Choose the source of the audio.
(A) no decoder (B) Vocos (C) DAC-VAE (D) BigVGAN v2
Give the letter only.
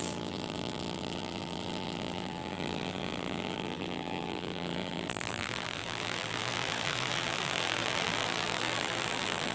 D